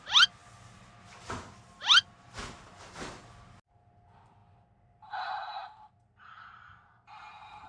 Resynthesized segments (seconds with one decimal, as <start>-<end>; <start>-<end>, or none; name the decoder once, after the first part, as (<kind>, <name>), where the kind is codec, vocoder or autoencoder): none